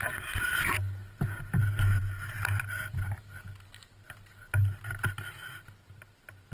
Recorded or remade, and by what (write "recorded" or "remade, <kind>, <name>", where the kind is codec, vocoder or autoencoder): recorded